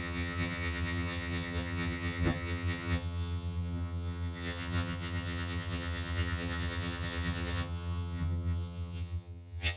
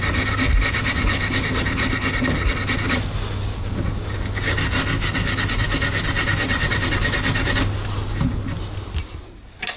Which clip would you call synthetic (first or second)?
first